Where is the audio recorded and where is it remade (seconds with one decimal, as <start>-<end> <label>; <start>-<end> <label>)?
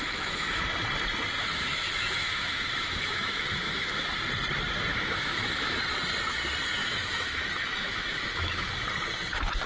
0.0-0.6 remade; 0.6-1.4 recorded; 1.4-4.1 remade; 4.1-4.9 recorded; 4.9-5.8 remade; 5.8-6.8 recorded; 6.8-8.7 remade; 8.7-9.7 recorded